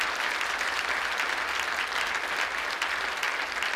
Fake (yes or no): no